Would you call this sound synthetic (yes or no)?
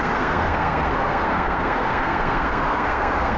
yes